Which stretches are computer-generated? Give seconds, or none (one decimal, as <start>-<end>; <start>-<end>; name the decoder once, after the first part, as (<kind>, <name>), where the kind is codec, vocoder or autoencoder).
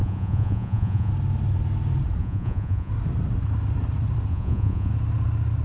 0.0-1.1 (vocoder, Vocos); 2.2-2.9; 4.3-4.9